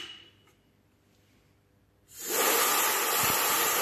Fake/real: fake